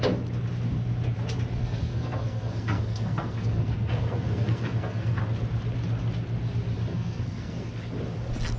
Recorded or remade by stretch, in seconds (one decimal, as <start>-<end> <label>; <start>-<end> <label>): 0.0-1.6 recorded; 1.6-5.2 remade; 5.2-6.9 recorded; 6.9-7.7 remade; 7.7-8.6 recorded